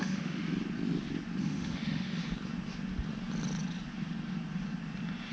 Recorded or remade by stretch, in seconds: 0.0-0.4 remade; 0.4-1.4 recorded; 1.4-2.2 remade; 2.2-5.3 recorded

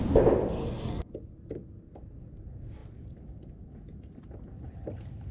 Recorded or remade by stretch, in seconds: 0.0-0.6 recorded; 0.6-1.1 remade; 1.1-5.3 recorded

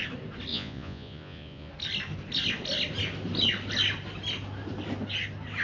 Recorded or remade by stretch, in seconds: 0.0-0.5 recorded; 0.5-1.7 remade; 1.7-5.6 recorded

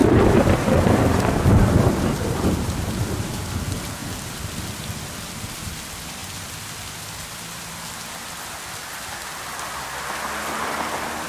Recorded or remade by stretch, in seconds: 0.0-3.4 remade; 3.4-11.3 recorded

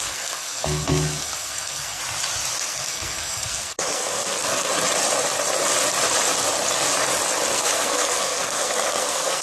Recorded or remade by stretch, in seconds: 0.0-2.0 remade; 2.0-2.6 recorded; 2.6-4.7 remade; 4.7-7.5 recorded; 7.5-9.4 remade